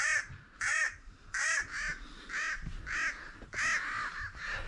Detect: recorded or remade recorded